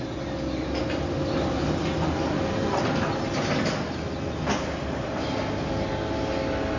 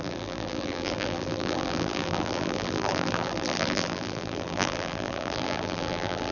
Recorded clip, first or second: first